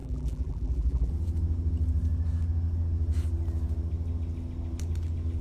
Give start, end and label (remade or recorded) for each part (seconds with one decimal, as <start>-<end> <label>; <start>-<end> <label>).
0.0-1.1 remade; 1.1-5.4 recorded